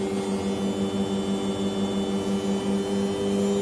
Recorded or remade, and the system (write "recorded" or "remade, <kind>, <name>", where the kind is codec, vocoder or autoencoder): recorded